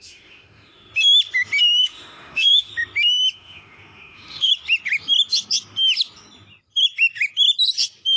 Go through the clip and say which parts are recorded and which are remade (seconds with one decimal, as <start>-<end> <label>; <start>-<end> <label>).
0.0-0.9 remade; 0.9-1.8 recorded; 1.8-2.7 remade; 2.7-3.3 recorded; 3.3-4.5 remade; 4.5-8.2 recorded